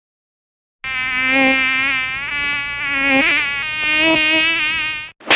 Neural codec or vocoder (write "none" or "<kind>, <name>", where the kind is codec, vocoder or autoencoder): none